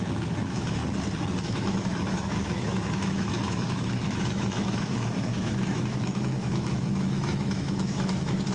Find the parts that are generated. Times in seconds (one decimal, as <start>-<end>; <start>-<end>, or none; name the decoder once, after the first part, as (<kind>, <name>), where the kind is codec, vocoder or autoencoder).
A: 0.0-0.8 (autoencoder, DAC-VAE); 1.4-8.5